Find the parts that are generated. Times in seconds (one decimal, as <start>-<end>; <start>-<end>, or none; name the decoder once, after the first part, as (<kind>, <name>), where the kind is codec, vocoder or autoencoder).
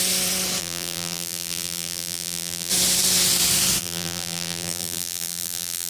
0.6-2.7 (vocoder, BigVGAN v2); 3.8-5.9